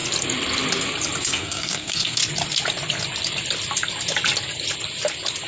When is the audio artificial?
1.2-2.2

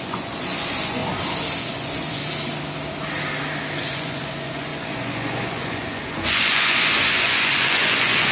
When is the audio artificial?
0.0-1.0; 1.6-2.2; 3.8-8.3